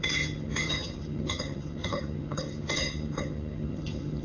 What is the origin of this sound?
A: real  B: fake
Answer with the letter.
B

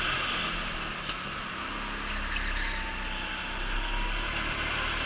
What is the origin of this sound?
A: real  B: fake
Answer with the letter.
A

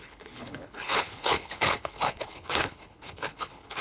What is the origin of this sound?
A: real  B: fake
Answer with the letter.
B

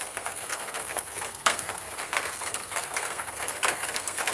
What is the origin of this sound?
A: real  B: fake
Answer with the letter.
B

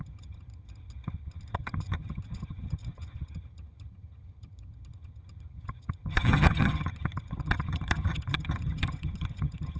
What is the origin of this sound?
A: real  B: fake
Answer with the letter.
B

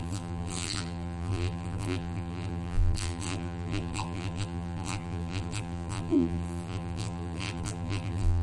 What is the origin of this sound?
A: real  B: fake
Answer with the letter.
B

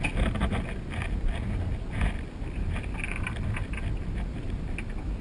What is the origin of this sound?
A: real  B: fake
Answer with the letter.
A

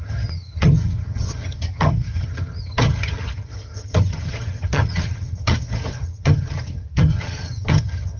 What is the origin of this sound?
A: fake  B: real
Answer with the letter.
A